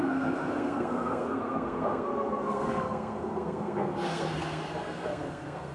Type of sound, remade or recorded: remade